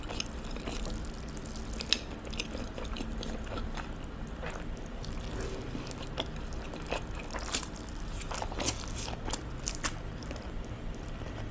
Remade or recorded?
recorded